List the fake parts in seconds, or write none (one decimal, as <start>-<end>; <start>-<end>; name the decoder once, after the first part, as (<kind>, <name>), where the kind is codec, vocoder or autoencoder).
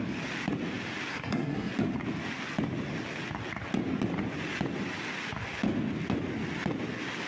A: 1.1-1.7 (codec, SNAC)